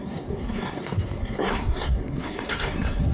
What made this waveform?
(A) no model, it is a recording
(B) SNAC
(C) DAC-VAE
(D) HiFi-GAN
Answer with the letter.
B